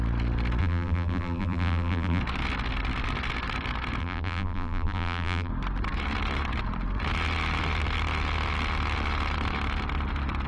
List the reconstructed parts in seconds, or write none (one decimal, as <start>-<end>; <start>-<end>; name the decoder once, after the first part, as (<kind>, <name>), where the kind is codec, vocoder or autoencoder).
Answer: 0.6-2.2 (vocoder, BigVGAN v2); 4.0-5.5